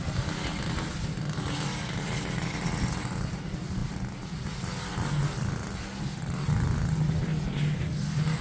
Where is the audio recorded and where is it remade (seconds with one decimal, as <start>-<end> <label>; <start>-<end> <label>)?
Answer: 0.0-8.4 recorded